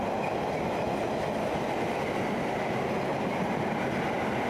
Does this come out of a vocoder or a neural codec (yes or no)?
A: no